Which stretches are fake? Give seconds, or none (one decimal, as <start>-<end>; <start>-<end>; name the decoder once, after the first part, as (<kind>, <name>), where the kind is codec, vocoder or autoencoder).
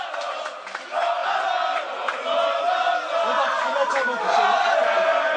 none